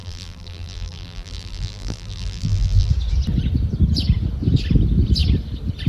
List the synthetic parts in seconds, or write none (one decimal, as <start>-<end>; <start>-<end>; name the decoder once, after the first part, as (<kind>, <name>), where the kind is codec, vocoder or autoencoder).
0.0-2.9 (vocoder, BigVGAN v2)